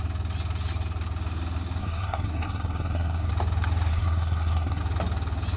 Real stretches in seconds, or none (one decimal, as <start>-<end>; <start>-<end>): 0.0-1.8; 3.3-3.9; 4.8-5.6